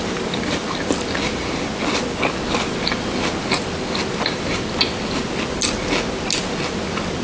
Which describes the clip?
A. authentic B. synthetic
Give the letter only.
A